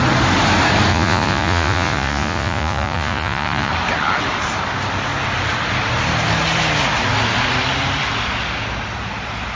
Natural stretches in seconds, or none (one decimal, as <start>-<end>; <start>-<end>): 0.0-0.9; 3.7-9.5